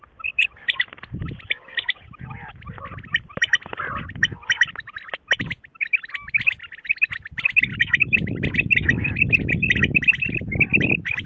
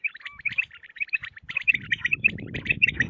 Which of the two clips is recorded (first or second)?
first